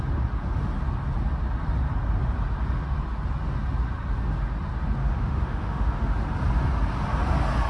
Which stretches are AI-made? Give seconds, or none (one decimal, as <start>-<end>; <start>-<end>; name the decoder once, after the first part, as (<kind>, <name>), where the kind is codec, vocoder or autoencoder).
5.0-6.1 (autoencoder, DAC-VAE)

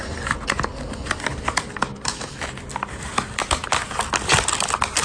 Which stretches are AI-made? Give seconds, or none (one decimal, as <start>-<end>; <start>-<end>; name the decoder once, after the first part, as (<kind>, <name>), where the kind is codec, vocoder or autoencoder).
1.8-2.5 (autoencoder, DAC-VAE)

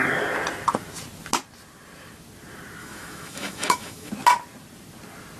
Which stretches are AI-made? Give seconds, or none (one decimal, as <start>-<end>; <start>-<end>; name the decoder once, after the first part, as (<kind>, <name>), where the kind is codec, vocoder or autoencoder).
2.8-4.1 (autoencoder, DAC-VAE)

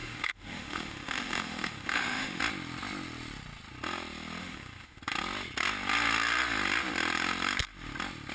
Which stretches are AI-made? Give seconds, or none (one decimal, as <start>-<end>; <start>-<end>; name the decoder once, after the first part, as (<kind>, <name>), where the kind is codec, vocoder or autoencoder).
0.0-2.4 (autoencoder, DAC-VAE); 4.4-5.0